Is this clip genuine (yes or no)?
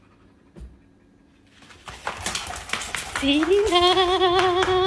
yes